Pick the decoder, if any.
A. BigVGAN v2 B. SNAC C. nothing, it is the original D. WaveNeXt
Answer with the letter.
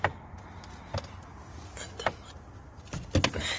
C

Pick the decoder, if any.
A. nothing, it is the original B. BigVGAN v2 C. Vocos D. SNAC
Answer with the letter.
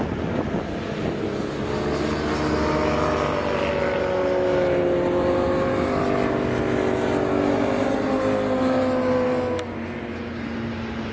A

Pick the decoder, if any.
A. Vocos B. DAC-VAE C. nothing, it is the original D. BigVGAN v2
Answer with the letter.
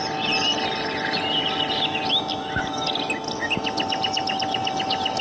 C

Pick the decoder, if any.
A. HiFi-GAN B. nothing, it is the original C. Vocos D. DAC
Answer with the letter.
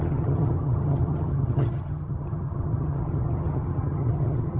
A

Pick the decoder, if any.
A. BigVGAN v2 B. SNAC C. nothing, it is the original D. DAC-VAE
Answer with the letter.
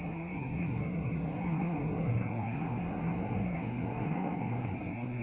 B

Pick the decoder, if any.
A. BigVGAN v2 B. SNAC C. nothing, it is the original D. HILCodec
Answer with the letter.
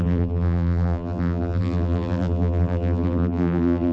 A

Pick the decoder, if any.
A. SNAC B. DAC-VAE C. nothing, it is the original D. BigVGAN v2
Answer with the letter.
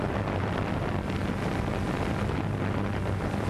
C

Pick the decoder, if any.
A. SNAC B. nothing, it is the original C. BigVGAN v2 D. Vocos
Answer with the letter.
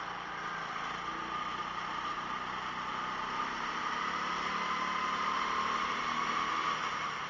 B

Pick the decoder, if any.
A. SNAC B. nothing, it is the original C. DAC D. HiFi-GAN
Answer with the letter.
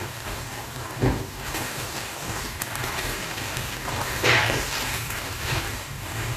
C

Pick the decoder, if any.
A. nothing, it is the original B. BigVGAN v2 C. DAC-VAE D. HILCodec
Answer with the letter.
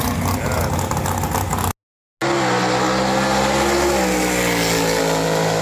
A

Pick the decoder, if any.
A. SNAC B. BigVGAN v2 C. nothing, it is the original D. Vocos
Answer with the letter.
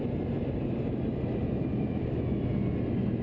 C